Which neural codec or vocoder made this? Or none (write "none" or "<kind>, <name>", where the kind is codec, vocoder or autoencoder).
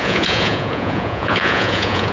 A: vocoder, Vocos